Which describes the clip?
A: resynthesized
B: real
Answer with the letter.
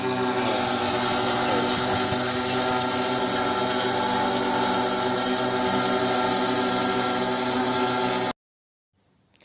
B